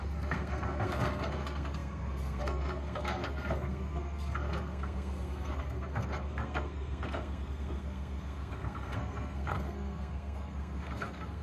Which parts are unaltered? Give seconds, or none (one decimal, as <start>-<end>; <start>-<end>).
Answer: none